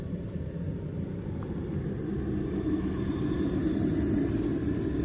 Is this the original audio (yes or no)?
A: yes